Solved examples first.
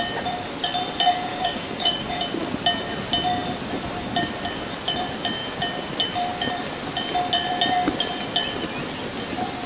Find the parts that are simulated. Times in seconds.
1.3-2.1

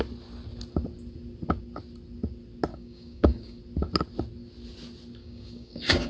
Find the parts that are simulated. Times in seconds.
2.7-3.6; 5.2-6.1

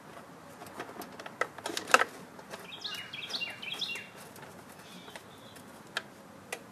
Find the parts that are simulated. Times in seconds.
none